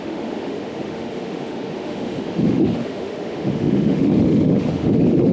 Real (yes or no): no